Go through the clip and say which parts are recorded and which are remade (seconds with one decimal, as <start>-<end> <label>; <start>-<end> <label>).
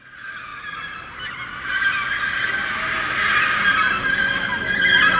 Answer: 0.0-5.2 recorded